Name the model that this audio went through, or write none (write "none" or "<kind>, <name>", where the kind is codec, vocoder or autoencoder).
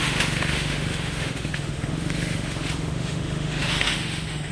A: autoencoder, DAC-VAE